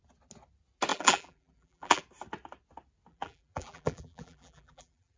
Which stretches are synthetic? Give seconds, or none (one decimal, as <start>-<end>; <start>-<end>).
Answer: 0.9-2.0; 3.1-5.2